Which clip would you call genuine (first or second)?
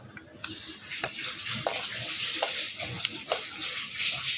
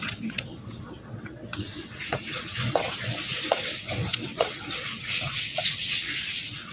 first